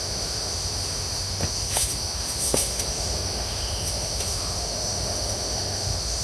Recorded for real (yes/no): no